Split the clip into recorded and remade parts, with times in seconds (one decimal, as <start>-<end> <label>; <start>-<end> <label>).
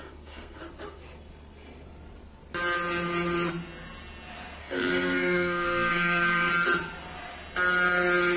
0.0-0.6 remade; 0.6-4.6 recorded; 4.6-6.5 remade; 6.5-8.4 recorded